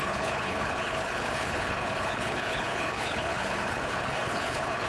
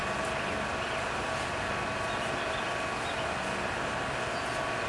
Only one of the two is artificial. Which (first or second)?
first